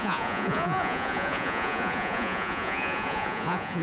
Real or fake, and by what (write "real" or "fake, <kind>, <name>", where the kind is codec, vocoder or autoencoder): fake, vocoder, Vocos